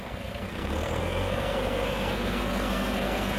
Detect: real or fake fake